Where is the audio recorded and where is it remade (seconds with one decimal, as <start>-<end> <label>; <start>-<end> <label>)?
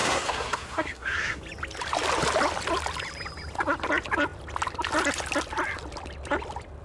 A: 0.0-1.4 remade; 1.4-6.8 recorded